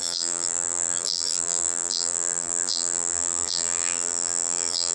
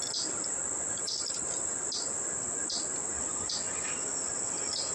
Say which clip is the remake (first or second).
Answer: first